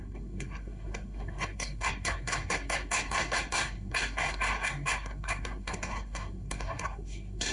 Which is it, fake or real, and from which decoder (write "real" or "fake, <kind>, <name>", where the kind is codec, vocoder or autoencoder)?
fake, codec, SNAC